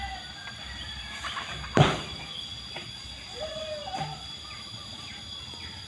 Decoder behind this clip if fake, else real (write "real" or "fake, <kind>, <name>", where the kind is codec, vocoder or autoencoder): real